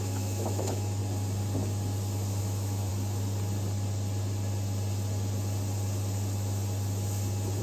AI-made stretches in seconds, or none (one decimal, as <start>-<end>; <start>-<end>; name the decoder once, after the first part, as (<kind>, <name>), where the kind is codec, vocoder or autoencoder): 0.0-1.0 (autoencoder, DAC-VAE); 2.4-2.9